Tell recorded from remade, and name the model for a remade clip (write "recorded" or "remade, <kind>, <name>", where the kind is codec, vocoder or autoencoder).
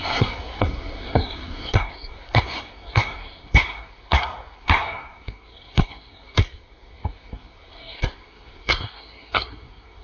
remade, codec, SNAC